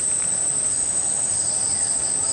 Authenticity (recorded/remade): recorded